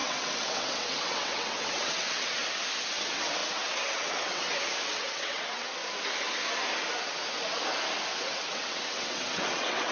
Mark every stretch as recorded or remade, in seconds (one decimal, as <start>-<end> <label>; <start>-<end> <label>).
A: 0.0-2.4 remade; 2.4-2.9 recorded; 2.9-5.8 remade; 5.8-8.1 recorded; 8.1-9.9 remade